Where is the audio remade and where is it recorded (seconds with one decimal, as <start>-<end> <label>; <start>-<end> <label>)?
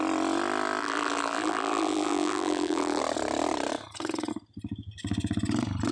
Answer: 0.0-0.8 recorded; 0.8-3.0 remade; 3.0-5.9 recorded